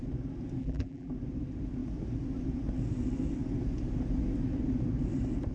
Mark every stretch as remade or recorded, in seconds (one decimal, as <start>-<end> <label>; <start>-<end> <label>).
0.0-0.6 recorded; 0.6-1.1 remade; 1.1-5.5 recorded